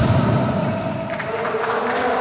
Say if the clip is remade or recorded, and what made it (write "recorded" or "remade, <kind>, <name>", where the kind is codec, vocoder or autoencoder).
recorded